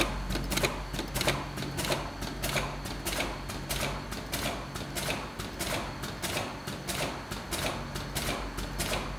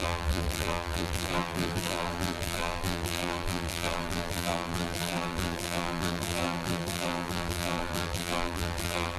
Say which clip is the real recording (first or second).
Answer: first